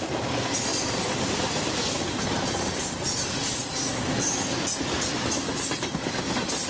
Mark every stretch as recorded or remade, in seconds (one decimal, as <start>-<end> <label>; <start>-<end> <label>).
0.0-6.7 recorded